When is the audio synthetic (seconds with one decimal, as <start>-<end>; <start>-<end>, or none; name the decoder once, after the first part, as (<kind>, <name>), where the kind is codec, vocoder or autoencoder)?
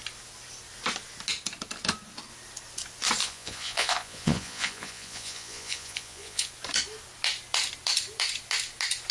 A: 3.2-6.5 (vocoder, Vocos)